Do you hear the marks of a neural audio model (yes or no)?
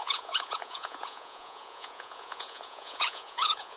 yes